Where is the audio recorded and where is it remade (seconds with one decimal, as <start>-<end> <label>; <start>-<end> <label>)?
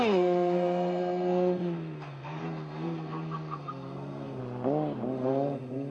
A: 0.0-4.4 remade; 4.4-5.1 recorded; 5.1-5.9 remade